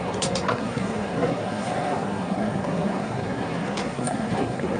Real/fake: fake